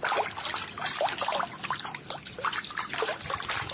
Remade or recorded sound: recorded